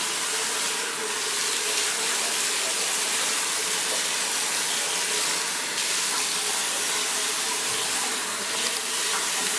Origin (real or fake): real